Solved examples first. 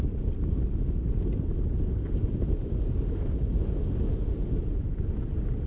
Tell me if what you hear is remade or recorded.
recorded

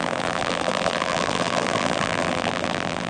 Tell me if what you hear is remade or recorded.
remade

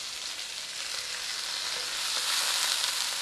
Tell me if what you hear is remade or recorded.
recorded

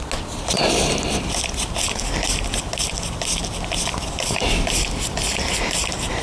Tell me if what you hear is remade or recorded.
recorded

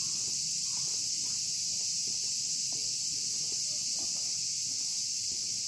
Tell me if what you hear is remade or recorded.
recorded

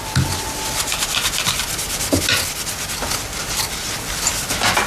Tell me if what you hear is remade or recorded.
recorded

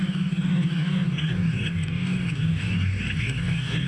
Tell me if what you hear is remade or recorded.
remade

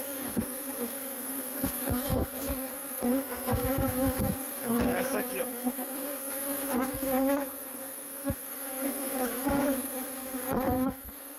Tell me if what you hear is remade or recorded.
remade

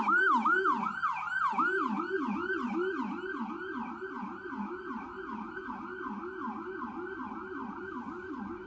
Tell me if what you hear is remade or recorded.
recorded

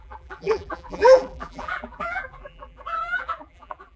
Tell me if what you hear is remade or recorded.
remade